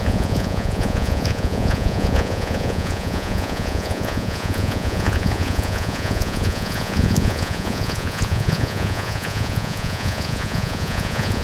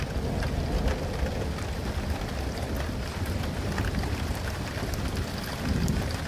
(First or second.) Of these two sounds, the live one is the second